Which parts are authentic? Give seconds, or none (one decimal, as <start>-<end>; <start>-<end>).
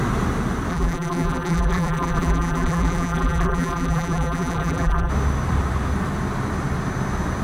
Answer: 0.0-0.7; 5.1-7.4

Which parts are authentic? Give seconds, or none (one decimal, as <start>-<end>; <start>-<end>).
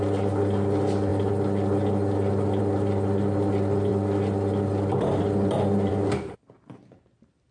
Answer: 0.0-7.5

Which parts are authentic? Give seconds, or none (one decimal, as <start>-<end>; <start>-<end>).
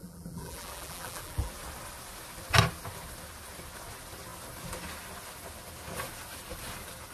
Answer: 1.5-7.1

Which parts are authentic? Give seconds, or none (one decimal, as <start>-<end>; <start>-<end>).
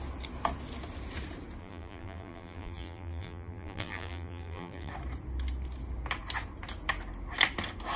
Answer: 0.0-1.6; 4.9-8.0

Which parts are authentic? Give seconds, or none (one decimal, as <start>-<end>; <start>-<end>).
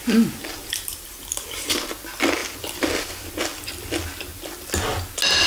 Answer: 0.0-0.6; 1.9-5.5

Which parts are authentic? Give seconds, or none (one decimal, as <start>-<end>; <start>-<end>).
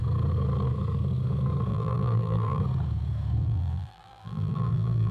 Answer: 0.0-1.7; 2.6-3.4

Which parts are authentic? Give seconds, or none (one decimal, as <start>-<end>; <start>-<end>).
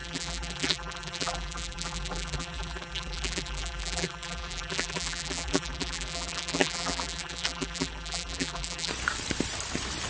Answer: 8.9-10.1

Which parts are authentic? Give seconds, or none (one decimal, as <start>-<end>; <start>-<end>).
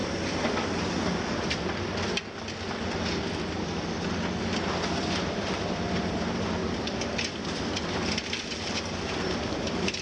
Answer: 0.0-4.7; 6.6-7.9